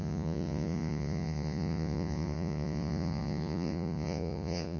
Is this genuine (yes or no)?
no